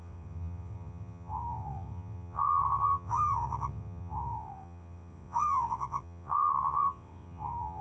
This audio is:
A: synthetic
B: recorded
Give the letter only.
A